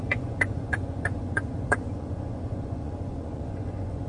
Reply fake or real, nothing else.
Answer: fake